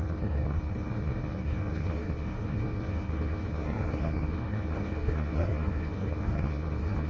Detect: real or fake fake